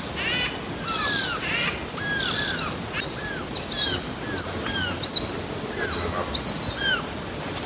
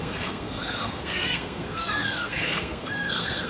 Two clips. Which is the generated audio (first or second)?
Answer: second